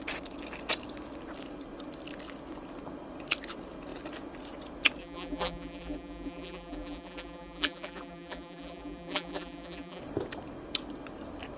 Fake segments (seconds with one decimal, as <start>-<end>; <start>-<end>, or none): 5.0-10.0